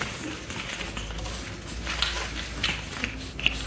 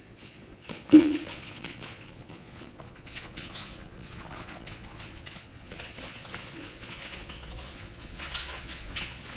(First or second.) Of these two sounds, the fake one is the second